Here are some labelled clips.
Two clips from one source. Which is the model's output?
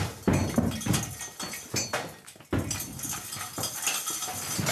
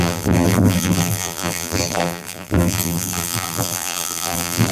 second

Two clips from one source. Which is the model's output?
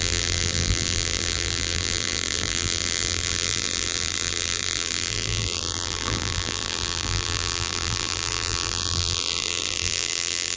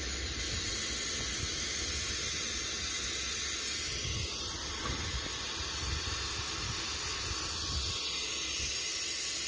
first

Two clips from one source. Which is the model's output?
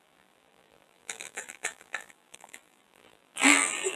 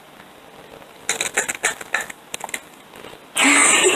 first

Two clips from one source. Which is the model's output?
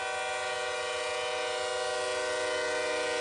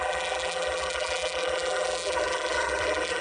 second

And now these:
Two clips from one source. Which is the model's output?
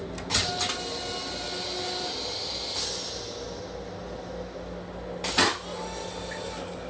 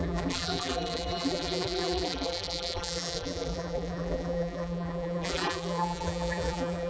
second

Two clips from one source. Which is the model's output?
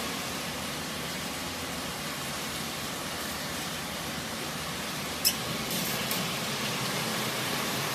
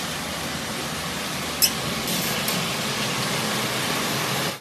first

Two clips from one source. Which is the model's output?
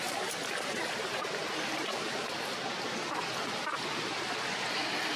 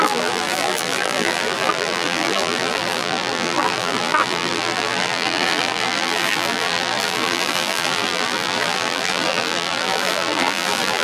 second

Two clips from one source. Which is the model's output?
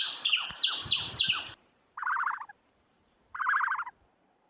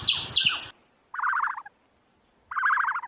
first